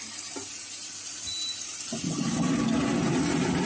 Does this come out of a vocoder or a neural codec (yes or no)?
no